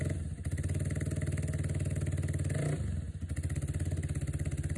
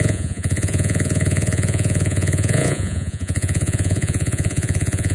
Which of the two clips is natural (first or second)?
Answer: first